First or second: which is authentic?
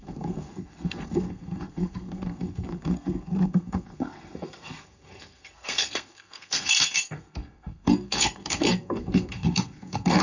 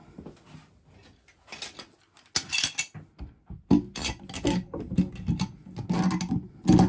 second